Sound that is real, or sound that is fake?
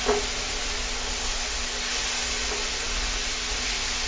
real